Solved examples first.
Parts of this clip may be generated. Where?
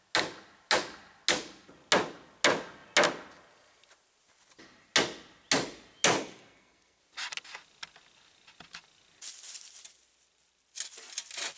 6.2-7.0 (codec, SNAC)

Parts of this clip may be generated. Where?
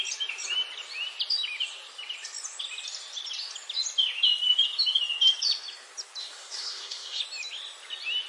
6.2-7.2 (codec, SNAC)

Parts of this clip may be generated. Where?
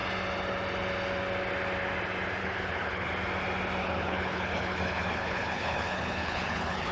2.4-3.1 (codec, HILCodec); 3.8-6.9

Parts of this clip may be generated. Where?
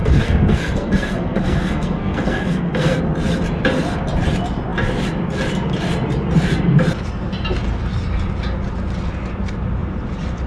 0.0-3.0 (codec, SNAC)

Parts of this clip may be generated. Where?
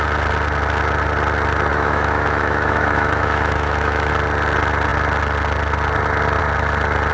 1.7-4.1 (autoencoder, DAC-VAE)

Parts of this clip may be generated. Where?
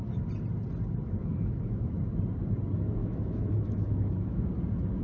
1.2-2.0 (autoencoder, DAC-VAE); 3.0-4.5